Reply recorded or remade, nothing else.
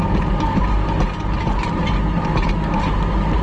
remade